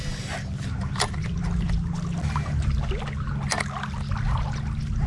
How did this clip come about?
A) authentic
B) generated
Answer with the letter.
A